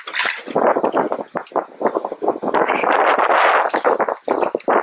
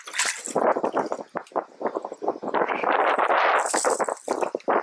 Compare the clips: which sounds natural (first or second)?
first